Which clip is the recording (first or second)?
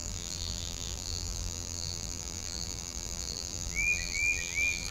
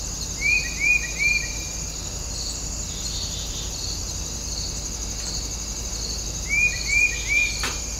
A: second